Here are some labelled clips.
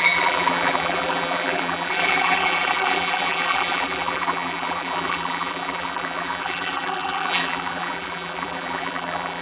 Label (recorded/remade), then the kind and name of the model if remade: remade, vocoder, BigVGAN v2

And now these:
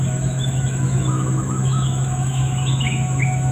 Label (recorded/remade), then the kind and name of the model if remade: remade, autoencoder, DAC-VAE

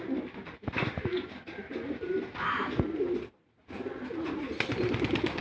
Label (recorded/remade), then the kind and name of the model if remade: recorded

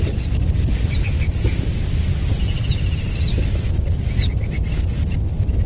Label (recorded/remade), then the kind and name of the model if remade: recorded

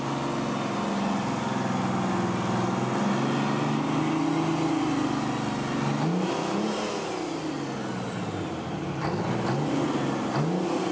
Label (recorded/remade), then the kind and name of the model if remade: recorded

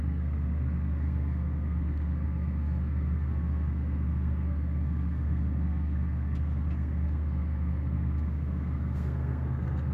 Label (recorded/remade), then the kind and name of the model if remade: remade, codec, SNAC